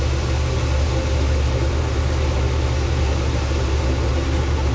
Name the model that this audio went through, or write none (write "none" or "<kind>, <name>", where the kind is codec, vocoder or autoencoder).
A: none